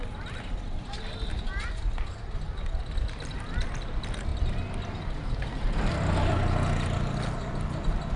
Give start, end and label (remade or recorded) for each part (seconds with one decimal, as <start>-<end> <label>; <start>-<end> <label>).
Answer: 0.0-8.2 recorded